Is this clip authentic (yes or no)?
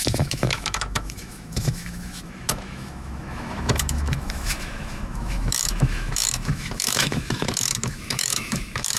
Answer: no